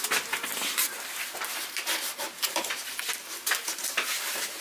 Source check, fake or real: real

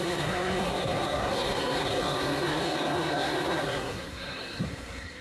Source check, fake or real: fake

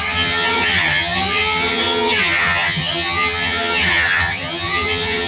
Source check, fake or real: fake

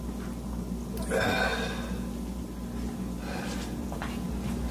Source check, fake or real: real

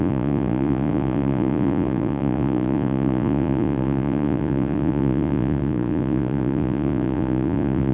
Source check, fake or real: fake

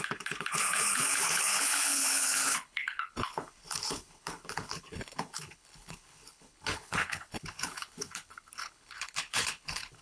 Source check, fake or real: fake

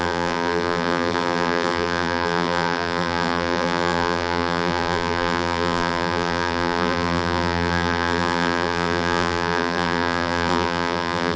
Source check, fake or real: fake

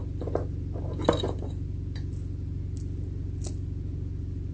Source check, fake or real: real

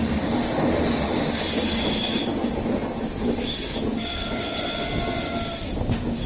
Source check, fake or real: real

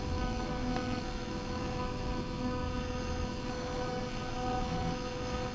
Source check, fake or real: fake